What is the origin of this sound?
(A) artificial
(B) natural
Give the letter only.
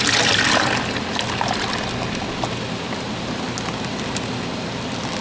B